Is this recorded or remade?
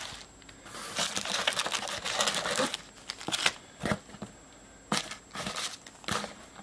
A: recorded